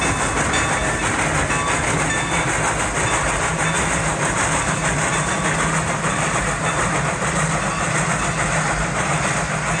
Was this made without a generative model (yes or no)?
yes